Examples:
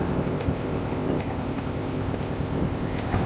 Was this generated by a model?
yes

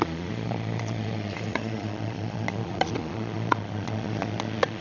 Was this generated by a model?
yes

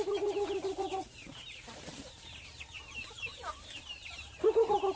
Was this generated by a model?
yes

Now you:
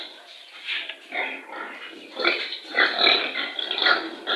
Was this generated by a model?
yes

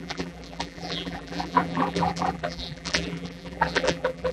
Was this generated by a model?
yes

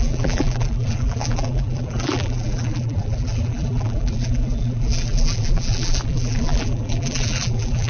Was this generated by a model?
yes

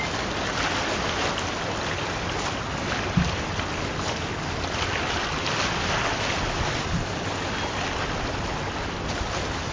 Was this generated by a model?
no